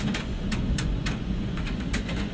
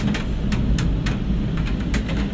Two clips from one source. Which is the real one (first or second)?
second